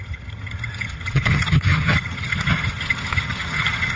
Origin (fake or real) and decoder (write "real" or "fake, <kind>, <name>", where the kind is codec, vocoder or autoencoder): fake, vocoder, HiFi-GAN